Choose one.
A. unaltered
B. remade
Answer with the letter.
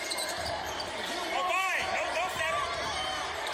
B